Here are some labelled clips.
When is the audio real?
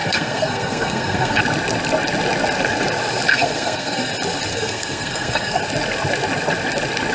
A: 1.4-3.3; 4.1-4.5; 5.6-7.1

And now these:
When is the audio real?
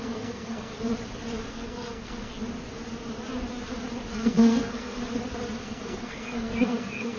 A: 0.7-1.5; 2.3-4.1; 5.0-5.6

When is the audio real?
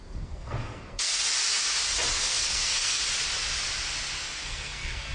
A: 1.2-2.1; 3.0-4.4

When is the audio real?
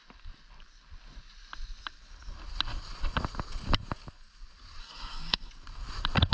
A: 0.0-4.8; 5.5-6.3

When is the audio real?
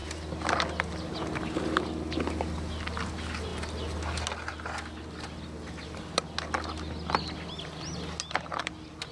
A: 0.0-9.1